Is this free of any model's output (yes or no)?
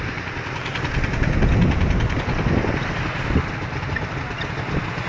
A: yes